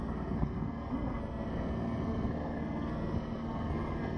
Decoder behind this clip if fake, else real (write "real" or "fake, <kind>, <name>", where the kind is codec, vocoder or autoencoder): fake, codec, SNAC